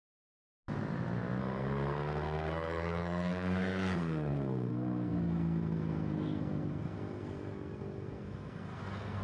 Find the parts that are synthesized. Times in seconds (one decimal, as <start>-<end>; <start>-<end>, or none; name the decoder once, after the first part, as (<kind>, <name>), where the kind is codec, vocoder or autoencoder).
0.0-0.4 (codec, SNAC); 1.4-9.2